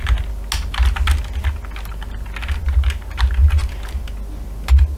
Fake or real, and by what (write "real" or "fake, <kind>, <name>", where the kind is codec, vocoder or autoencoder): real